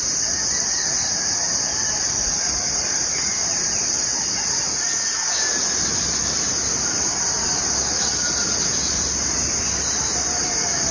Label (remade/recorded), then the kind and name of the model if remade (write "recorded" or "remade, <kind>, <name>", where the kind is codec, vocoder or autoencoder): recorded